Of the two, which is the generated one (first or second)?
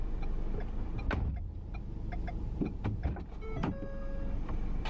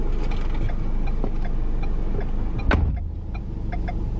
first